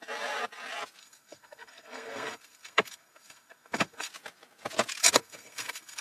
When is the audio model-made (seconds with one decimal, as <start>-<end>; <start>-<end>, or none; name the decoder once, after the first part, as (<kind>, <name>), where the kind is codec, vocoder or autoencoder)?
1.0-4.1 (codec, SNAC); 5.0-6.0